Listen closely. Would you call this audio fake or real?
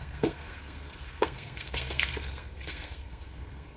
fake